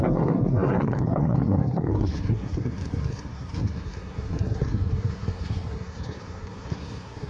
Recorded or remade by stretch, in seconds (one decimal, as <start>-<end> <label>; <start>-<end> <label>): 0.0-7.3 remade